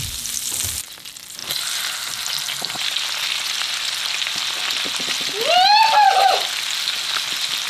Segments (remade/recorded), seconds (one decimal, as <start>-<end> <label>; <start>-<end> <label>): 0.0-7.7 recorded